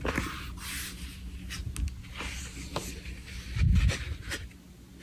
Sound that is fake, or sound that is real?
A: real